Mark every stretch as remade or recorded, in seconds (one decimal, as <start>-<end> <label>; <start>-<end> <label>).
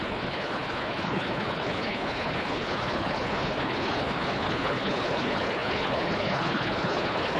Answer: 0.0-7.4 remade